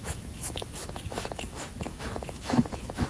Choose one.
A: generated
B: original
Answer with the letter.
A